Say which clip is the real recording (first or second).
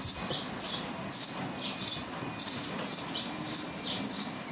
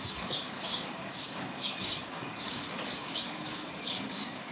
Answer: first